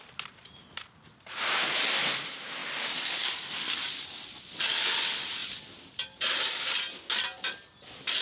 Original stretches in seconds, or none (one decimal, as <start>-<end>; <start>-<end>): 0.0-8.2